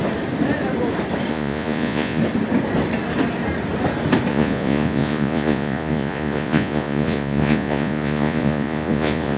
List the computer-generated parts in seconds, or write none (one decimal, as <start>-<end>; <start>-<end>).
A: 1.3-2.2; 4.3-9.4